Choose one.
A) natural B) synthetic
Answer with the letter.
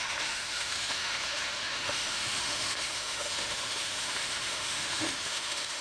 B